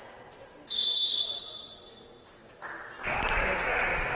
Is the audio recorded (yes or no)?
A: yes